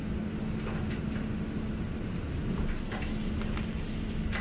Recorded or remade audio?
recorded